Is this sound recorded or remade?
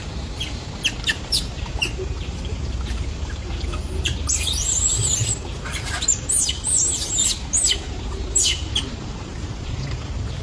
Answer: remade